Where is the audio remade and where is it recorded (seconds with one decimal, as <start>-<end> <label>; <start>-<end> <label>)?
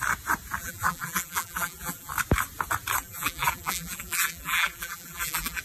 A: 0.0-0.6 recorded; 0.6-2.1 remade; 2.1-3.0 recorded; 3.0-5.6 remade